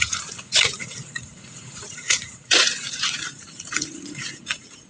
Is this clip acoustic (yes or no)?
no